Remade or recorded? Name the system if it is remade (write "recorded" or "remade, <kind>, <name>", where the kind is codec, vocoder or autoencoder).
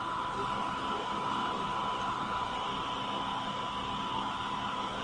recorded